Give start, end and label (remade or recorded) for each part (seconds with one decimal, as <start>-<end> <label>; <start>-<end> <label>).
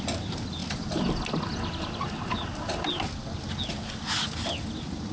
0.0-5.1 recorded